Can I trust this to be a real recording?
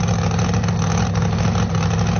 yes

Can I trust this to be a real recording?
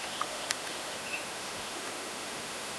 no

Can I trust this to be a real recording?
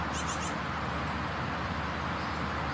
yes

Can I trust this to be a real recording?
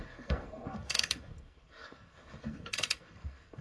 no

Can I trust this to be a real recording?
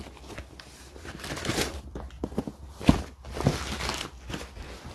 yes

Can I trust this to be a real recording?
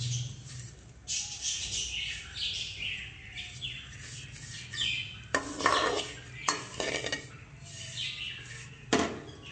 yes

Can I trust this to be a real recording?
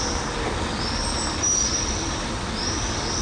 yes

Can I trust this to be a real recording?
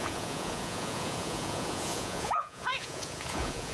no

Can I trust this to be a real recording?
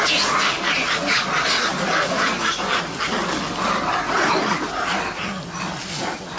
yes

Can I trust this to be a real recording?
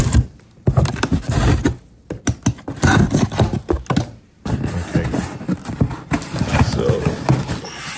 yes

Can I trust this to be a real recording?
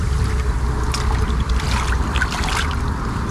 yes